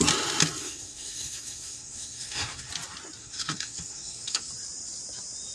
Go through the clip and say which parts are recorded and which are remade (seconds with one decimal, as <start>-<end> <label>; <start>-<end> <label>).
0.0-0.6 recorded; 0.6-2.7 remade; 2.7-3.2 recorded; 3.2-4.5 remade; 4.5-5.5 recorded